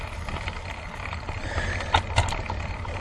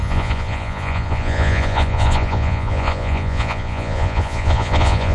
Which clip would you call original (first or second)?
first